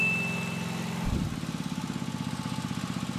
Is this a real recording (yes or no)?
yes